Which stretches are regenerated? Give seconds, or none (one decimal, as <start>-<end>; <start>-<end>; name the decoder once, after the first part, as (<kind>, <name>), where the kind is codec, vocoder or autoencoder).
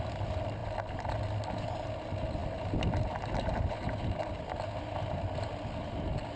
none